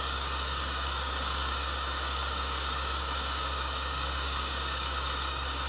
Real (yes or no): no